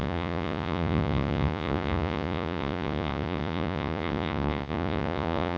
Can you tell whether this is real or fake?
fake